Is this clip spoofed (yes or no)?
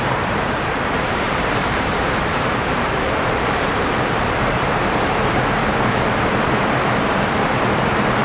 yes